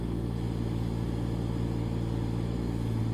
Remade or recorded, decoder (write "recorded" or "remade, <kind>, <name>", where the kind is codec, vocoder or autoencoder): recorded